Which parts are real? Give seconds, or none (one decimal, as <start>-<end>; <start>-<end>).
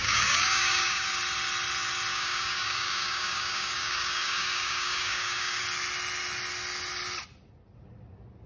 1.1-2.1; 5.6-8.5